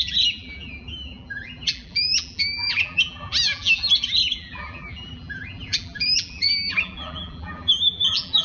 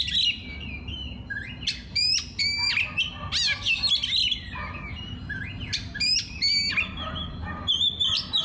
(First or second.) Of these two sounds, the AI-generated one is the first